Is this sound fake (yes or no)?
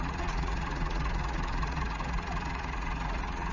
yes